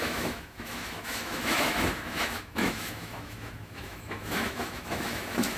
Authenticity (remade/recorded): remade